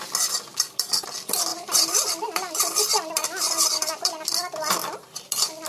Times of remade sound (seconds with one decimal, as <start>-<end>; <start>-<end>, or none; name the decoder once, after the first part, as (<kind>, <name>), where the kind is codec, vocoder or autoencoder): 0.5-1.1 (vocoder, BigVGAN v2); 1.5-4.3; 4.8-5.7